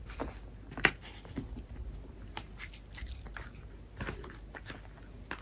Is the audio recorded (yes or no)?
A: yes